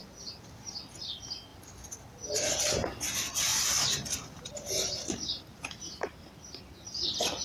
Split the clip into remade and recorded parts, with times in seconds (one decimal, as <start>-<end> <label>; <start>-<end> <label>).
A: 0.0-0.8 remade; 0.8-3.5 recorded; 3.5-4.7 remade; 4.7-5.5 recorded; 5.5-6.3 remade; 6.3-7.4 recorded